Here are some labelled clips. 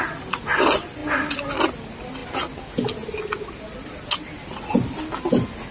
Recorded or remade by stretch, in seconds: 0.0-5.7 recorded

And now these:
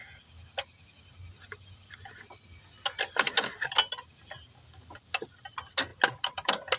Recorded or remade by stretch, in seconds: 0.0-6.8 recorded

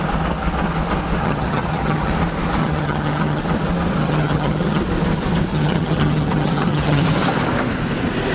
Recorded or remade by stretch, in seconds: 0.0-1.2 recorded; 1.2-2.1 remade; 2.1-2.6 recorded; 2.6-3.4 remade; 3.4-4.0 recorded; 4.0-4.8 remade; 4.8-5.5 recorded; 5.5-7.0 remade; 7.0-8.3 recorded